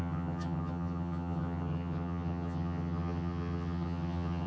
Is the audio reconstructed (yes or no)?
yes